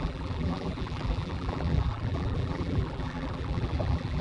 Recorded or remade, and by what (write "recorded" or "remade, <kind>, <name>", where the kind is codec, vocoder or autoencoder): remade, vocoder, BigVGAN v2